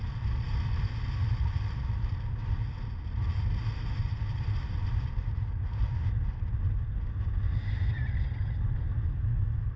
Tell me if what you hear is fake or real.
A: real